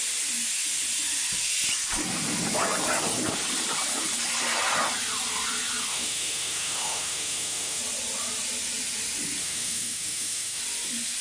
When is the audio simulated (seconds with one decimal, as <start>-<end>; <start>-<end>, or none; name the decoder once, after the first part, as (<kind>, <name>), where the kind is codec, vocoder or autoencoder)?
5.9-7.8 (autoencoder, DAC-VAE); 9.4-10.6